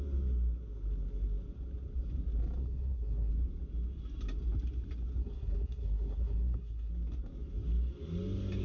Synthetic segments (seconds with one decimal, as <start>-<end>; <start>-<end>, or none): 2.6-3.3; 5.2-6.9